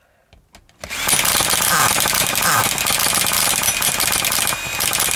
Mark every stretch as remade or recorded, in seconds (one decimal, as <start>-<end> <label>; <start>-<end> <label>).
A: 0.0-5.2 recorded